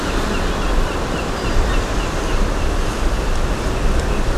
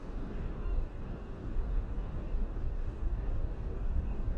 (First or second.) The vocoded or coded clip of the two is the second